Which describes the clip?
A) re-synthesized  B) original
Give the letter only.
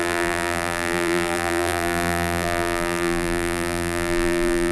A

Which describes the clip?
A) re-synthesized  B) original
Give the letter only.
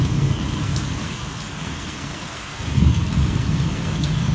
A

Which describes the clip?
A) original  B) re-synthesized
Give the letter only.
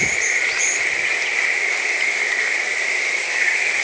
A